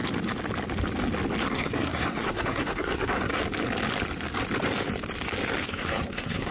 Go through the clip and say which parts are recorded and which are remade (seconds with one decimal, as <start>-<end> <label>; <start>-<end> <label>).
0.0-1.5 recorded; 1.5-3.3 remade; 3.3-5.7 recorded; 5.7-6.5 remade